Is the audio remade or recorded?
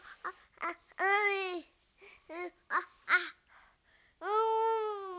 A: recorded